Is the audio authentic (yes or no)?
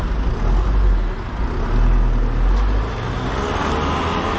yes